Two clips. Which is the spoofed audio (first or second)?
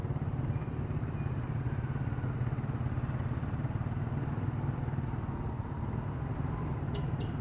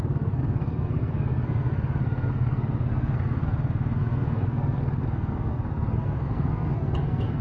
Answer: second